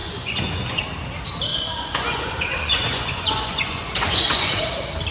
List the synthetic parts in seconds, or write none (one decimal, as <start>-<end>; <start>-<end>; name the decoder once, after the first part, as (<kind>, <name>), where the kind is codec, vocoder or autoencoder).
0.0-0.8 (vocoder, Vocos); 1.5-4.6